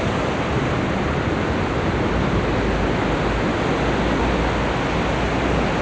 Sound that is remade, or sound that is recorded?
recorded